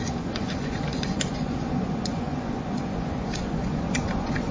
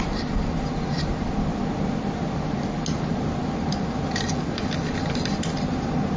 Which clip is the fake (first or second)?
first